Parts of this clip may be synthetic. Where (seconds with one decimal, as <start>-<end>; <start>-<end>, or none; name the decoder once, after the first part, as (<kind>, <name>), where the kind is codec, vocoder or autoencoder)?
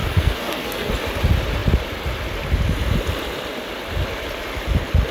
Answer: 0.0-0.9 (codec, SNAC)